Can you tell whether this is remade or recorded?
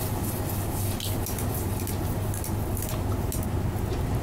recorded